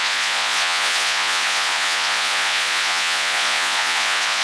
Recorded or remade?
remade